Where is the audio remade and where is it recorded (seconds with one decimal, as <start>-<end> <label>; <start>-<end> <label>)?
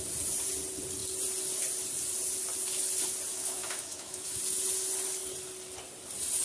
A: 0.0-3.3 recorded; 3.3-4.4 remade; 4.4-6.4 recorded